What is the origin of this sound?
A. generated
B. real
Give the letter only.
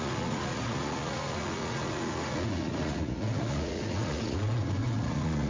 A